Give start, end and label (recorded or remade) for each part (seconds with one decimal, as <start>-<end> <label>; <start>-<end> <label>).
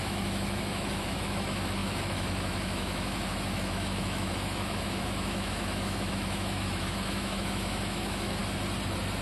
0.0-8.4 remade; 8.4-9.2 recorded